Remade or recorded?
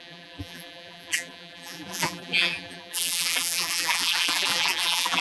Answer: remade